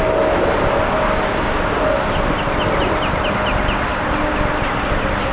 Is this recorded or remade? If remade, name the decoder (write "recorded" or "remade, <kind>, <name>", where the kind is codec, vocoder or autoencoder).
recorded